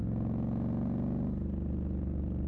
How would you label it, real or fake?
real